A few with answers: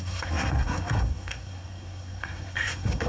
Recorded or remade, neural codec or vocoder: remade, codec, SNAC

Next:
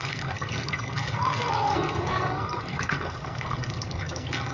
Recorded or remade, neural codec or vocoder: remade, codec, SNAC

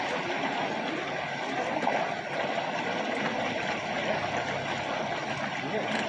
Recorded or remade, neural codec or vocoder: recorded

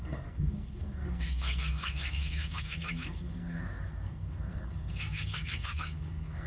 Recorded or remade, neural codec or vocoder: remade, codec, SNAC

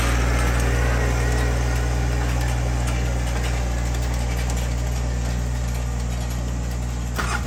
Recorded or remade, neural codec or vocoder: recorded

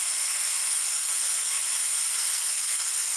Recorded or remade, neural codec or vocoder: remade, codec, SNAC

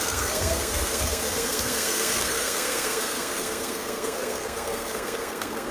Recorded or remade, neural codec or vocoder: remade, codec, SNAC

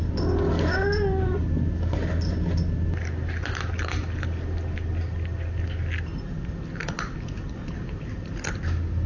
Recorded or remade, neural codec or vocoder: recorded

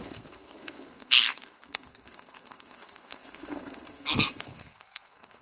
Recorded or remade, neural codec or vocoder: remade, codec, SNAC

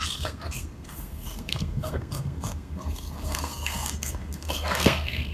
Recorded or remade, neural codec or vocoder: remade, codec, SNAC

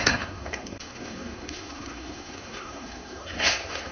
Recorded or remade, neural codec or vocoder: remade, codec, SNAC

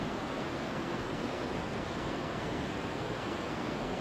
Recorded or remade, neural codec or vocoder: remade, codec, SNAC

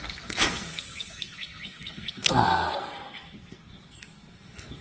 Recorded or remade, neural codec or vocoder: remade, codec, SNAC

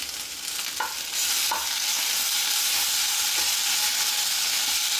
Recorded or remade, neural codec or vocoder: recorded